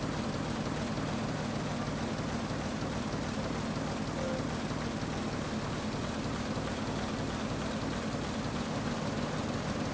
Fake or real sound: real